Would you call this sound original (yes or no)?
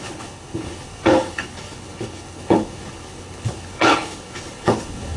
no